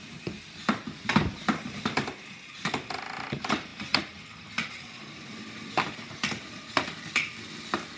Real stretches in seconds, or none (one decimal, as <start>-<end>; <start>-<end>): 0.0-8.0